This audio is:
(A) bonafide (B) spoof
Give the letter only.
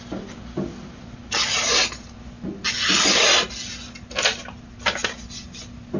A